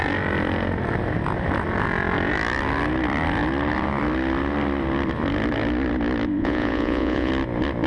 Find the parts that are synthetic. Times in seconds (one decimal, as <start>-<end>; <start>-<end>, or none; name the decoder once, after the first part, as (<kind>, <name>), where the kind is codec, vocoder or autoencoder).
6.4-7.3 (vocoder, Vocos)